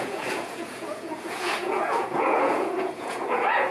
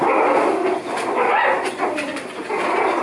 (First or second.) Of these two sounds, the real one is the second